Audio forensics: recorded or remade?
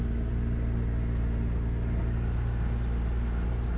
recorded